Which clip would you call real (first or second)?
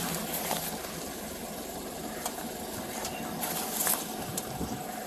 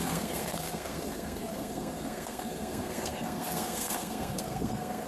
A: first